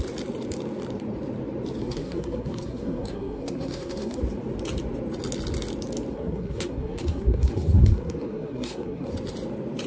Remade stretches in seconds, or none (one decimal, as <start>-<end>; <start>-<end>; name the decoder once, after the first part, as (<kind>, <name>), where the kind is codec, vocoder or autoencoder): 1.8-4.2 (codec, SNAC); 6.1-9.1